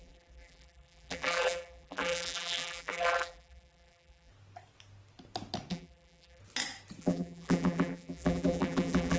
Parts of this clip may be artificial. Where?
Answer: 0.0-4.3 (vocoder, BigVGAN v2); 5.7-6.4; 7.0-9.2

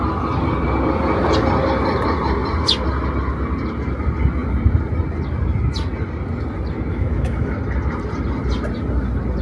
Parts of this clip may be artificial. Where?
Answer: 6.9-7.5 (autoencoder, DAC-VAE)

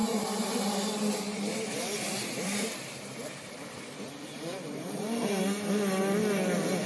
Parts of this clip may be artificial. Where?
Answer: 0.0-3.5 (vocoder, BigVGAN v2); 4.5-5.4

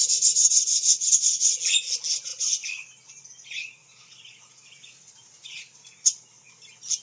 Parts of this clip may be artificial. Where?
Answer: 0.0-1.5 (vocoder, Vocos); 2.3-6.5

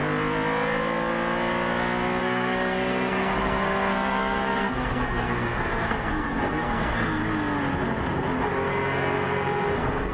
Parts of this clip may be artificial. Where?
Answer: 2.2-7.2 (codec, SNAC); 8.7-10.1